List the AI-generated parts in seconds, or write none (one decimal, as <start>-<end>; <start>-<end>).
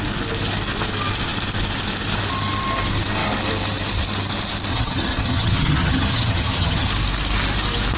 4.7-6.9